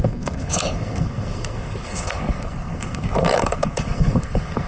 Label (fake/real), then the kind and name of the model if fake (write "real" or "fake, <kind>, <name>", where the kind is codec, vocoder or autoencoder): fake, codec, SNAC